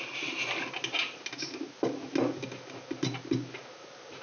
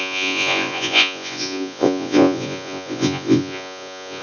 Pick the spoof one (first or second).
second